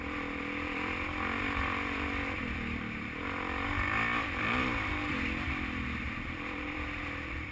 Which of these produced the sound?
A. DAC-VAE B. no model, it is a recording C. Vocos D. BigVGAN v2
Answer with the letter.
D